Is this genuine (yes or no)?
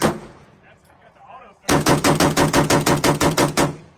no